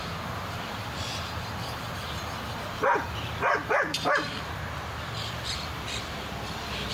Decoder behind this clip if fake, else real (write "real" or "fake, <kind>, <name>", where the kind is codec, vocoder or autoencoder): fake, vocoder, BigVGAN v2